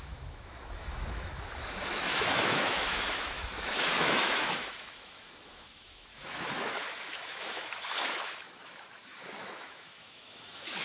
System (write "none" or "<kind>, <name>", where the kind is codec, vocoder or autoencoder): autoencoder, DAC-VAE